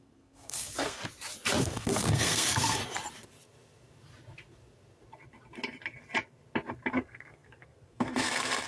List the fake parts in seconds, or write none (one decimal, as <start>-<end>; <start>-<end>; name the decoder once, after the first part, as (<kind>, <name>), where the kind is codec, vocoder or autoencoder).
0.0-1.0 (codec, SNAC); 1.6-2.8; 6.9-8.7